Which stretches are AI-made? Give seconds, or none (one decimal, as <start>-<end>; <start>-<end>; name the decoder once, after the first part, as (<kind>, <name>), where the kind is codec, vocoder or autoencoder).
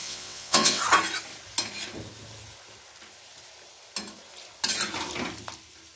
0.0-0.8 (vocoder, WaveNeXt)